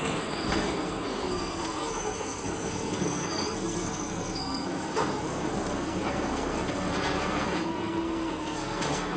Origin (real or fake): fake